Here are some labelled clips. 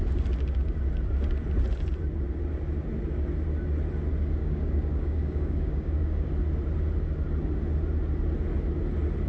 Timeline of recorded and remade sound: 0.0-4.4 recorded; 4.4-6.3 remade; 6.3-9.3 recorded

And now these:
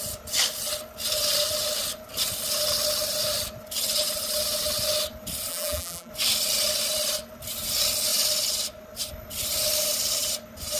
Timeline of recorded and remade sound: 0.0-5.5 recorded; 5.5-6.1 remade; 6.1-10.8 recorded